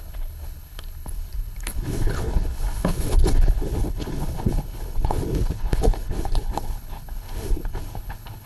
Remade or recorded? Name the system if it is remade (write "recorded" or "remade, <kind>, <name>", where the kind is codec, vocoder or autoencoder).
remade, codec, HILCodec